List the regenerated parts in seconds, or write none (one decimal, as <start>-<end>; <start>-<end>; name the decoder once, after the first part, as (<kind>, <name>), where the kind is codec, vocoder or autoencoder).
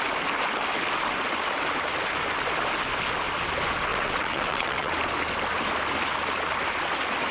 3.9-4.9 (vocoder, WaveNeXt)